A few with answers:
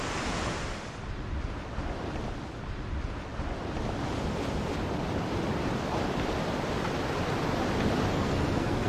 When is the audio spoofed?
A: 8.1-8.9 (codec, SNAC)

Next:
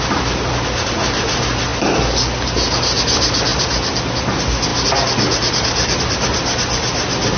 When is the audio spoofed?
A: 1.7-3.0 (vocoder, BigVGAN v2); 3.5-4.0; 4.7-6.0

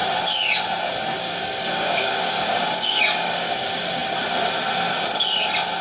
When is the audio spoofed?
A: 1.2-3.5 (codec, DAC)

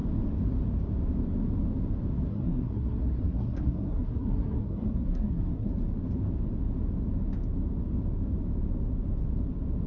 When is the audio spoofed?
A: 2.3-5.7 (codec, SNAC)

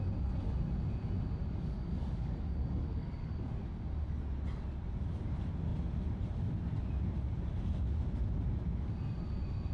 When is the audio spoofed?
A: 1.4-3.6 (codec, DAC)